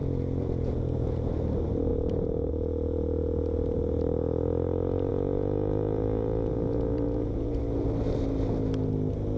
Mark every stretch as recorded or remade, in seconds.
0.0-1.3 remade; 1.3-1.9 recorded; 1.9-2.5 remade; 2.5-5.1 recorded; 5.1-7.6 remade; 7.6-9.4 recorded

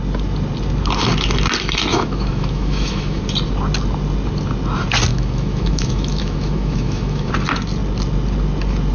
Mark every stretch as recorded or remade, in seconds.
0.0-1.9 recorded; 1.9-3.2 remade; 3.2-5.1 recorded; 5.1-7.3 remade; 7.3-8.9 recorded

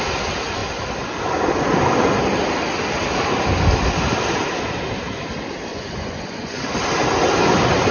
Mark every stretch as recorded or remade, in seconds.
0.0-5.7 recorded; 5.7-6.6 remade; 6.6-7.9 recorded

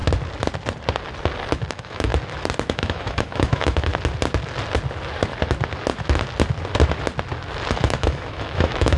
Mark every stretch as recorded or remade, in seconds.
0.0-1.7 recorded; 1.7-2.1 remade; 2.1-2.7 recorded; 2.7-3.9 remade; 3.9-7.7 recorded; 7.7-9.0 remade